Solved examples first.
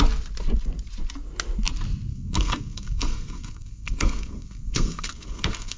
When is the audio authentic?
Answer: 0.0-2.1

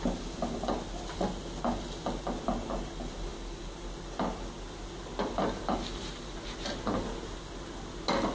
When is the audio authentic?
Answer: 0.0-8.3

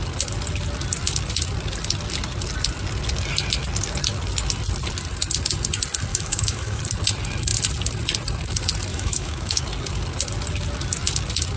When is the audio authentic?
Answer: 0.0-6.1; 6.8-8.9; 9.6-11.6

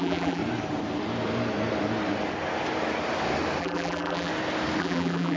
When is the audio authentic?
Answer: 0.4-3.6; 4.3-4.8

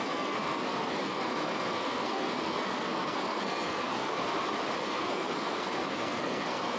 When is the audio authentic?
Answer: 4.3-4.8

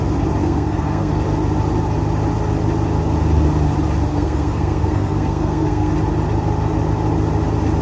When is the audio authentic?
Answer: 0.0-0.4; 1.1-4.1; 5.9-7.8